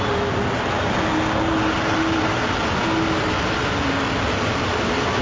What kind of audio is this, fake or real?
real